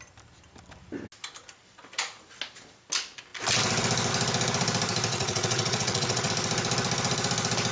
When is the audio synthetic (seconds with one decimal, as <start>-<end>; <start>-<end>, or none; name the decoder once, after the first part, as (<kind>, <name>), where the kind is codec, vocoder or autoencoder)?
5.1-6.3 (vocoder, WaveNeXt)